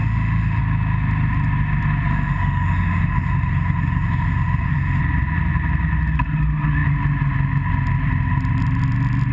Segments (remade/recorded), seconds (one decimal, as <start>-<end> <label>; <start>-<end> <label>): 0.0-0.6 remade; 0.6-2.1 recorded; 2.1-5.0 remade; 5.0-9.3 recorded